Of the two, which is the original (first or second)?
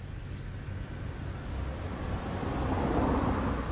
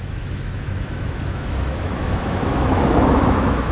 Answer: first